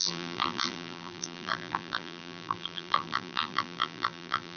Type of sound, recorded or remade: remade